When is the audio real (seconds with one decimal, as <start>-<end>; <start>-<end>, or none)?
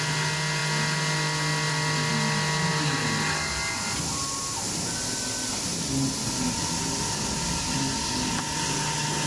0.0-9.3